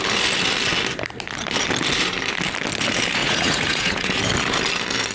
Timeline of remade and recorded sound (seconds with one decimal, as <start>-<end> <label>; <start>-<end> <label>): 0.0-3.2 recorded; 3.2-4.2 remade; 4.2-5.1 recorded